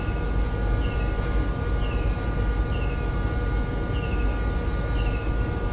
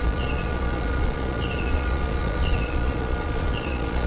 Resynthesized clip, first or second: second